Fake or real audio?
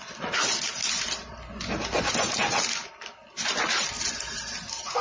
real